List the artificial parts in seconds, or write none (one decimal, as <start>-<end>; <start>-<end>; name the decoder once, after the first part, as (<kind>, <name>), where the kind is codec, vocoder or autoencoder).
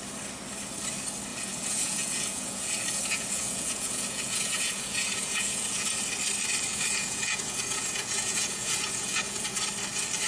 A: 1.3-6.0 (vocoder, Vocos); 6.7-9.6